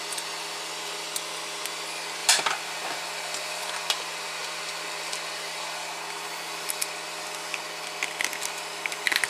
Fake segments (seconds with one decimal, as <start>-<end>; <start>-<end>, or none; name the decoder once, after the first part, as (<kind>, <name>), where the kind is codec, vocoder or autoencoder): 2.2-3.7 (vocoder, BigVGAN v2)